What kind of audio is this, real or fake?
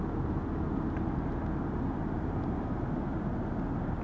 real